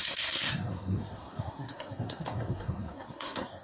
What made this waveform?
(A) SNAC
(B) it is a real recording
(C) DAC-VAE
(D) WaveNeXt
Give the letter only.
A